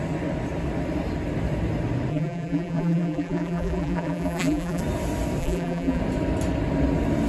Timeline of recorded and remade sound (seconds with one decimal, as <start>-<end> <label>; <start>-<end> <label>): 0.0-2.1 recorded; 2.1-4.8 remade; 4.8-5.4 recorded; 5.4-6.0 remade; 6.0-7.3 recorded